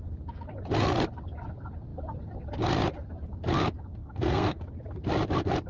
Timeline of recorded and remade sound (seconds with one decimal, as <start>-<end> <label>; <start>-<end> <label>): 0.0-4.0 recorded; 4.0-4.6 remade; 4.6-5.7 recorded